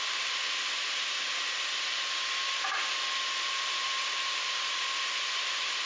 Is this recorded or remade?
remade